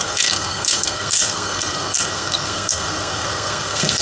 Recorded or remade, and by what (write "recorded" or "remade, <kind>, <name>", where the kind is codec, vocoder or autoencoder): remade, codec, SNAC